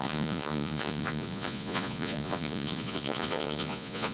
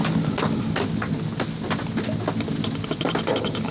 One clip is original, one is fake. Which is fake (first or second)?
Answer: first